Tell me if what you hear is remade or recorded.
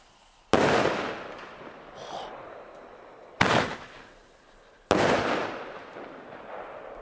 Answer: recorded